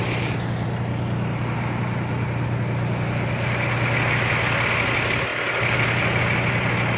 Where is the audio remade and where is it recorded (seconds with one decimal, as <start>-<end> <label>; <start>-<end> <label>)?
0.0-7.0 recorded